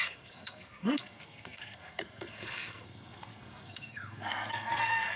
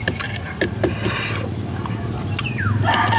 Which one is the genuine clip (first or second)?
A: second